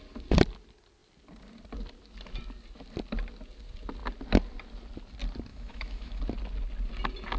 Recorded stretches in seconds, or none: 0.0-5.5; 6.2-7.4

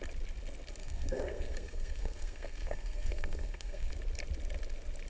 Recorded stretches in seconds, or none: 0.0-0.8; 3.9-5.1

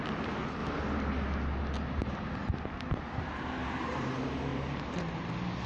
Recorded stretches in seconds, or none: 0.0-3.6; 4.1-4.5; 5.3-5.7

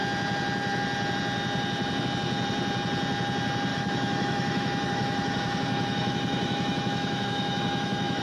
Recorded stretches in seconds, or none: 0.0-3.7

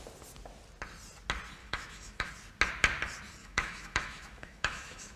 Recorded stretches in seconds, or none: 0.0-1.6; 2.3-3.4